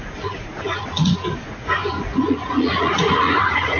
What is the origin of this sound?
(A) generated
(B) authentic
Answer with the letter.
A